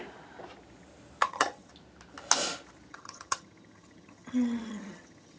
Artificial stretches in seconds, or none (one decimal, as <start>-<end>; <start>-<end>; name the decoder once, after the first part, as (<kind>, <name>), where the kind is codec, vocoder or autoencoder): 1.2-1.7 (vocoder, HiFi-GAN); 2.9-5.4